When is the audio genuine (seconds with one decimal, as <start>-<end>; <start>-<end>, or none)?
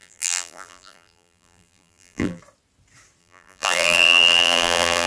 2.4-3.2